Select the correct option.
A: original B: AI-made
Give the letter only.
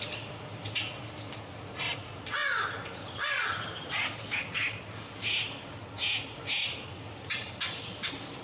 A